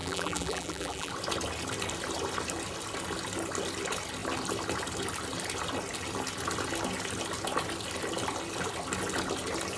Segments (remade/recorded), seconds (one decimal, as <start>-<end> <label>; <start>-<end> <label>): 0.0-1.1 remade; 1.1-9.8 recorded